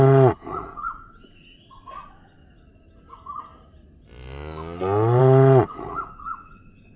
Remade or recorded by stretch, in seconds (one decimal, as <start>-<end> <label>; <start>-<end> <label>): 0.0-2.4 remade; 2.4-5.2 recorded; 5.2-7.0 remade